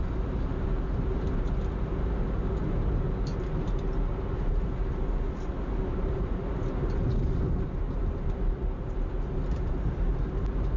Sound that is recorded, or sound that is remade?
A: recorded